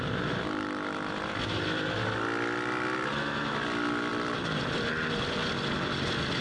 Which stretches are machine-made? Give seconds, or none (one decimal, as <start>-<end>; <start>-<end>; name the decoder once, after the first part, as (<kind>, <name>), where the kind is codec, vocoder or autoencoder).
none